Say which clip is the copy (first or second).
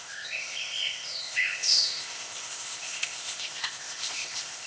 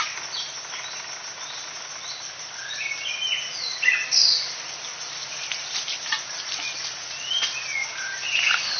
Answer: first